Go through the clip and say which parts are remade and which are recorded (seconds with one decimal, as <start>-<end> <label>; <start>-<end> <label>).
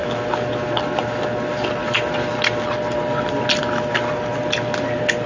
0.0-5.3 recorded